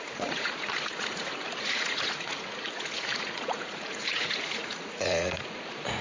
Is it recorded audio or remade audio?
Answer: remade